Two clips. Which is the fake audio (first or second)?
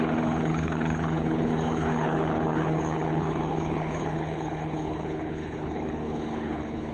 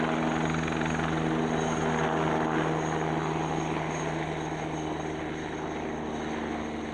first